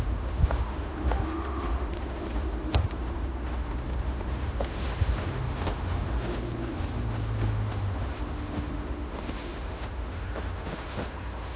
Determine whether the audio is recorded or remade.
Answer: remade